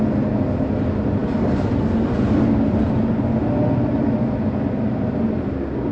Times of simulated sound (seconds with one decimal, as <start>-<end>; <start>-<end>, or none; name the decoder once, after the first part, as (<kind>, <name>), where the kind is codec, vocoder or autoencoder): none